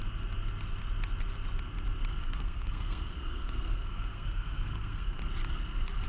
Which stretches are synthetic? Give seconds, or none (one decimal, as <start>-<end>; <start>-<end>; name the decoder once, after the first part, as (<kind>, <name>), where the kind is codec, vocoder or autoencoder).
2.2-5.2 (codec, SNAC)